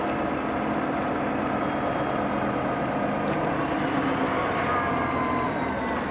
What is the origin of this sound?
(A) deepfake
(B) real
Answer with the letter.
B